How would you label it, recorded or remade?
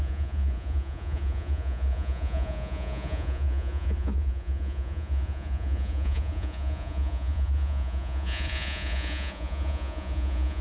remade